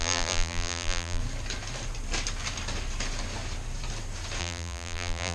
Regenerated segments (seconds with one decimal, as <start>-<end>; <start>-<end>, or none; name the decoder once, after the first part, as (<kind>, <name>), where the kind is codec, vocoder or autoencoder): 0.0-1.2 (vocoder, BigVGAN v2); 4.4-5.3